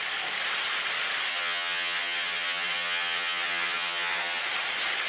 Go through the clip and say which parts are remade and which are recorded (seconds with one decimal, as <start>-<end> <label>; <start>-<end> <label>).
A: 0.0-1.3 recorded; 1.3-4.4 remade; 4.4-5.1 recorded